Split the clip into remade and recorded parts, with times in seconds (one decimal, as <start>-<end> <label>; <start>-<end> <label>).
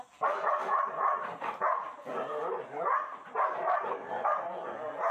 0.0-0.6 remade; 0.6-1.6 recorded; 1.6-2.3 remade; 2.3-4.5 recorded; 4.5-5.1 remade